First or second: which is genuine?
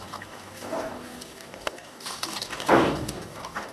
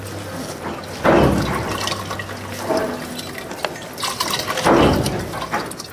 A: second